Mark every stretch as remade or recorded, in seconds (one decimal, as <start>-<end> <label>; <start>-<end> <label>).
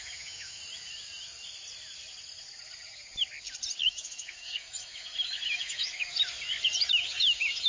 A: 0.0-0.6 remade; 0.6-3.8 recorded; 3.8-6.1 remade; 6.1-6.9 recorded; 6.9-7.7 remade